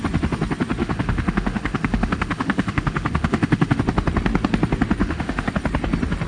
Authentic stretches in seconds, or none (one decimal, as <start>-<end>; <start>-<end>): 0.0-0.8; 3.8-5.0; 5.5-6.3